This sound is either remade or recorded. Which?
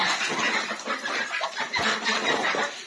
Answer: remade